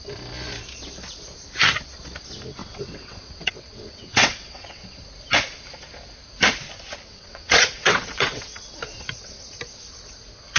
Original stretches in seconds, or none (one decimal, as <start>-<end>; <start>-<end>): 0.0-2.6; 5.0-7.1; 9.5-10.6

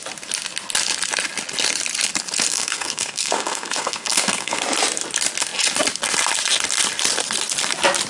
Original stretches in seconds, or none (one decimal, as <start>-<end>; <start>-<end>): 0.0-2.5; 4.6-8.1